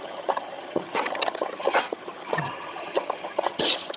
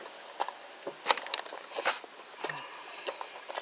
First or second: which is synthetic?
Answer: first